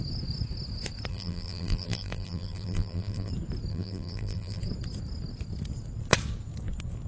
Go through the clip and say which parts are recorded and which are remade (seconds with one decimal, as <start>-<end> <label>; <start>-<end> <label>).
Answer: 0.0-1.1 recorded; 1.1-3.3 remade; 3.3-3.7 recorded; 3.7-4.6 remade; 4.6-7.1 recorded